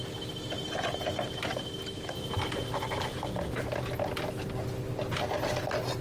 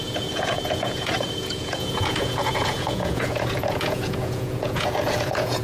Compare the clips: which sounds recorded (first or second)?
first